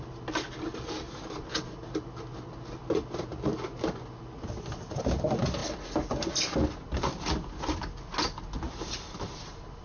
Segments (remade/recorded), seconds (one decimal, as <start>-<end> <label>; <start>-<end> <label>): 0.0-9.8 recorded